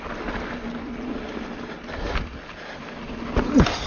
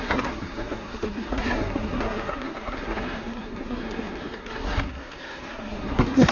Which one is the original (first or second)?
first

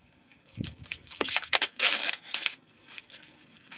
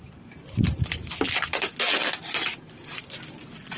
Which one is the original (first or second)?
second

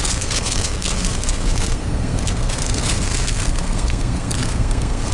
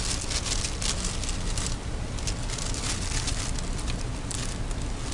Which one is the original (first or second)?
second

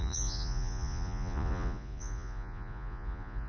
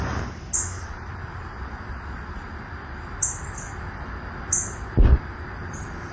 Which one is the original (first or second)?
second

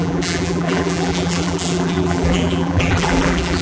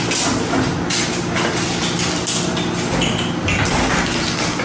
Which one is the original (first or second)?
second